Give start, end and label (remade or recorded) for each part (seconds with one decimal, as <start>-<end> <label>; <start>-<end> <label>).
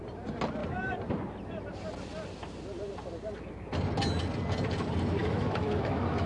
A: 0.0-5.2 recorded; 5.2-6.3 remade